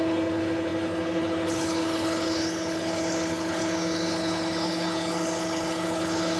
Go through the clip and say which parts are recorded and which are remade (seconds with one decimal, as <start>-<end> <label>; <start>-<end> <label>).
0.0-6.4 remade